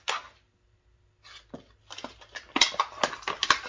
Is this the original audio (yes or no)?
yes